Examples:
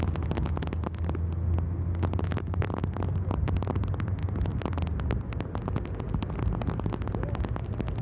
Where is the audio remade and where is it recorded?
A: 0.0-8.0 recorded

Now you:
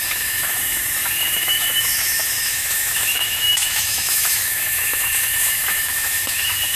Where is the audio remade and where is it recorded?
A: 0.0-6.8 remade

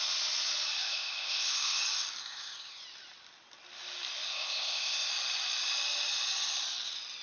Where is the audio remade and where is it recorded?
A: 0.0-0.8 recorded; 0.8-1.8 remade; 1.8-2.2 recorded; 2.2-2.8 remade; 2.8-4.3 recorded; 4.3-5.1 remade; 5.1-7.2 recorded

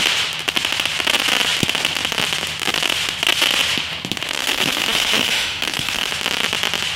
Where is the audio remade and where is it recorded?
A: 0.0-4.4 recorded; 4.4-6.1 remade; 6.1-7.0 recorded

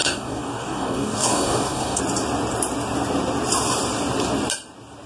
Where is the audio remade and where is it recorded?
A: 0.0-2.0 remade; 2.0-5.1 recorded

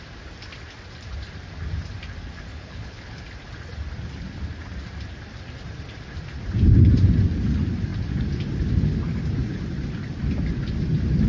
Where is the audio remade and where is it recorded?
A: 0.0-2.5 recorded; 2.5-3.2 remade; 3.2-11.3 recorded